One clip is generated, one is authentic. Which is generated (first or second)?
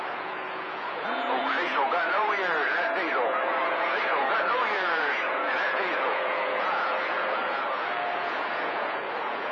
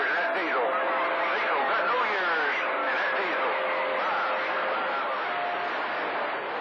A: first